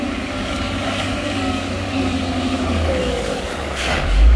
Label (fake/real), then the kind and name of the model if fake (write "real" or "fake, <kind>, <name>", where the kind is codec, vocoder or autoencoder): fake, codec, DAC